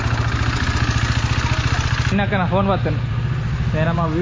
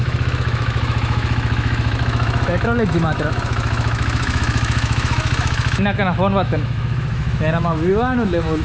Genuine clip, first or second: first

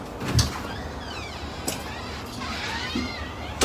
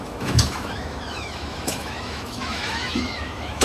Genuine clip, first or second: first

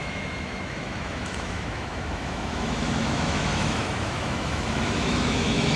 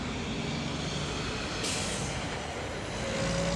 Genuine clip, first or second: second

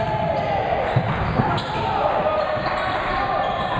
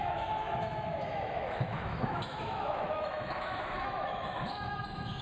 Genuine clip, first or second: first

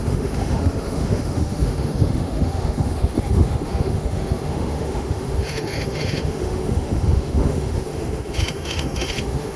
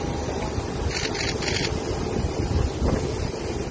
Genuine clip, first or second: second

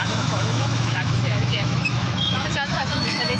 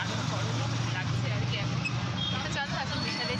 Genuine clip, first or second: second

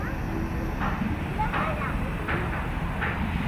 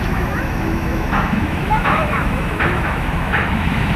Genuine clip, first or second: first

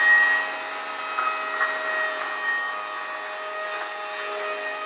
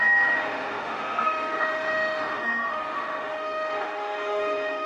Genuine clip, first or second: first